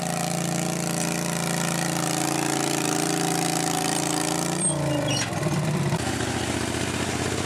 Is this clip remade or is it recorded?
recorded